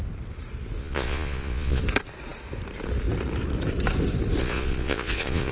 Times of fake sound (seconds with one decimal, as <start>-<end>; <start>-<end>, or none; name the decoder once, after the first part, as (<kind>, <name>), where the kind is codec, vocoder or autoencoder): 0.8-1.8 (vocoder, Vocos); 4.4-5.5

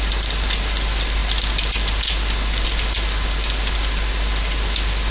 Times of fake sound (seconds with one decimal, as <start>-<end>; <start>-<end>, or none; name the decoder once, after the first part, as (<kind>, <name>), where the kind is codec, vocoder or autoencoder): none

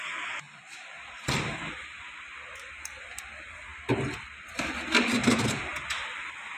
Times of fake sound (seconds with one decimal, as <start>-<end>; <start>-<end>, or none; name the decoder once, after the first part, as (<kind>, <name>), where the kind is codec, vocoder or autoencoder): 0.0-3.7 (vocoder, BigVGAN v2); 4.6-6.6

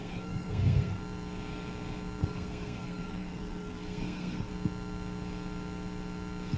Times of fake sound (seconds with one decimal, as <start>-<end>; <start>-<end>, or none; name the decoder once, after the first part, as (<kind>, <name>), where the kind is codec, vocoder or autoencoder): 0.0-1.0 (codec, SNAC); 2.2-4.5

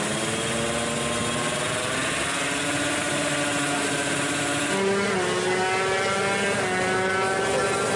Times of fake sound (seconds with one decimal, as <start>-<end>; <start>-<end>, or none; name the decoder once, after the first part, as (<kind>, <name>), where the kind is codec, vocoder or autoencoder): none